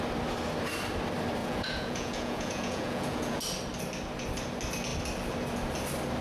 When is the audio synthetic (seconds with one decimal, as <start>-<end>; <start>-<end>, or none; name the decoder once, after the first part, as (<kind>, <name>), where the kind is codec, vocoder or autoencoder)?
1.4-3.4 (vocoder, Vocos)

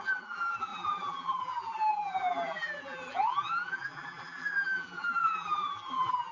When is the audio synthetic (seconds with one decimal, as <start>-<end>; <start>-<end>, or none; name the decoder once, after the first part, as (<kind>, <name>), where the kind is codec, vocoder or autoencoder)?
0.0-6.3 (vocoder, BigVGAN v2)

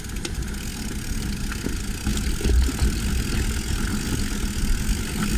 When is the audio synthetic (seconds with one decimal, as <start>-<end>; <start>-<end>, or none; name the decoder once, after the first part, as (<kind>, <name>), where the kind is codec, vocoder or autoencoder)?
none

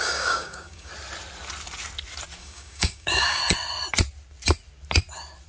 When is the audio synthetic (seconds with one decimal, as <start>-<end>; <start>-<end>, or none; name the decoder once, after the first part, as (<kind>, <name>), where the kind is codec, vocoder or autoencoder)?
0.0-0.9 (codec, DAC); 2.4-3.4

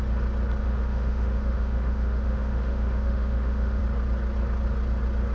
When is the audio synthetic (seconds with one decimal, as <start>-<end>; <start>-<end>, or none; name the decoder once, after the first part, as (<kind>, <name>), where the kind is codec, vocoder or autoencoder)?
0.6-3.8 (autoencoder, DAC-VAE)

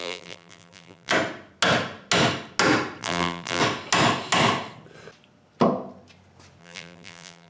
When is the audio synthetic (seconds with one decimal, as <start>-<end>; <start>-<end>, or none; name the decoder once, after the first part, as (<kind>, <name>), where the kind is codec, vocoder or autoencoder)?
0.0-1.1 (vocoder, BigVGAN v2); 3.0-3.6; 6.6-7.5